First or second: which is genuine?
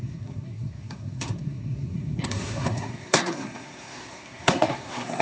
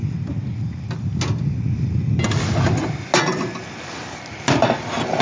second